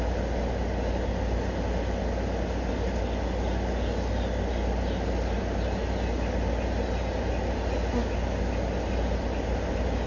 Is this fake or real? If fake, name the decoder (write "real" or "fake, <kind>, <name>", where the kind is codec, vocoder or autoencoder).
real